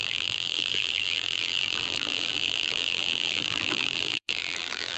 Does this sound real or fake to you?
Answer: fake